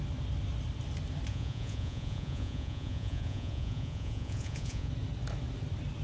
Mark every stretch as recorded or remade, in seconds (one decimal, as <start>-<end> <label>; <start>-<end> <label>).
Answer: 0.0-1.3 recorded; 1.3-4.9 remade; 4.9-6.0 recorded